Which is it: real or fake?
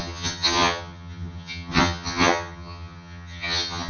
fake